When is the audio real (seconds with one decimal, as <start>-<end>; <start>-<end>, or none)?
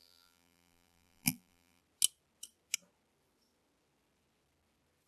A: 1.8-5.1